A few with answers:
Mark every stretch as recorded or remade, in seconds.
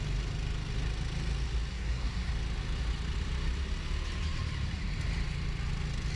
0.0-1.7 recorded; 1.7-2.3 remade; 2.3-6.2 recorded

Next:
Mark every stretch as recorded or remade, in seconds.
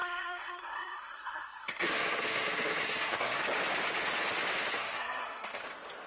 0.0-3.4 remade; 3.4-4.7 recorded; 4.7-5.6 remade; 5.6-6.1 recorded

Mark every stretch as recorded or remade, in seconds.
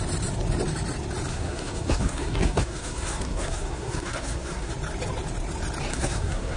0.0-1.3 recorded; 1.3-4.7 remade; 4.7-5.9 recorded; 5.9-6.6 remade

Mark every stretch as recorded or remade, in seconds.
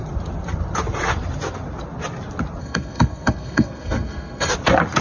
0.0-2.6 recorded; 2.6-4.5 remade; 4.5-5.0 recorded